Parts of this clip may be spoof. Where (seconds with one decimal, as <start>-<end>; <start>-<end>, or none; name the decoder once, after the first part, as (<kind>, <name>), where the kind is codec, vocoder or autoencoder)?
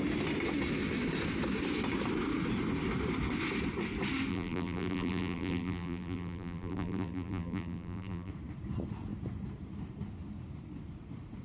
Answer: 4.3-8.3 (vocoder, BigVGAN v2)